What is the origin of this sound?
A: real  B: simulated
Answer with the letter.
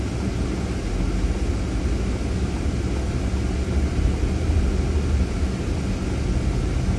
A